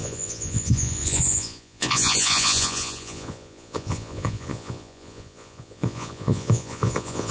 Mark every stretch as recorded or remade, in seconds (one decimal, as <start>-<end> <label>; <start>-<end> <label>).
0.0-7.3 remade